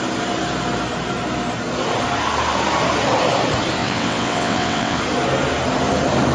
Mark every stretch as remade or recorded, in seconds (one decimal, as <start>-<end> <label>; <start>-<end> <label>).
0.0-3.8 recorded; 3.8-5.0 remade; 5.0-6.3 recorded